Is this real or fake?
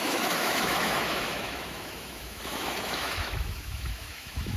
fake